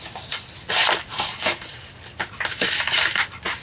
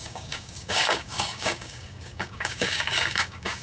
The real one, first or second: first